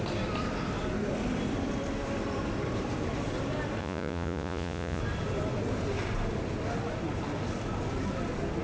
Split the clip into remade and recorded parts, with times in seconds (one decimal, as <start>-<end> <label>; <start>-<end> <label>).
0.0-3.8 recorded; 3.8-5.0 remade; 5.0-8.6 recorded